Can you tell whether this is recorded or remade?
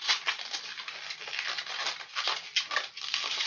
recorded